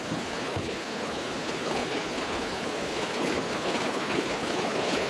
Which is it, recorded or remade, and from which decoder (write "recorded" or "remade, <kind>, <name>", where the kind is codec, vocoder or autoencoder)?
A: remade, codec, HILCodec